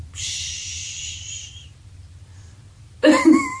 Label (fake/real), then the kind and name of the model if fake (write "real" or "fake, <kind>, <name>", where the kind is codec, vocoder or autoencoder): real